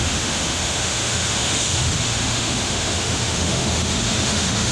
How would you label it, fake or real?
fake